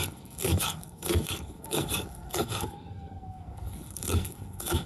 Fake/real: fake